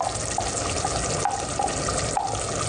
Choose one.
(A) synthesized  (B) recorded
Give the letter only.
B